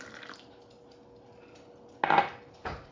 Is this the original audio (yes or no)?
yes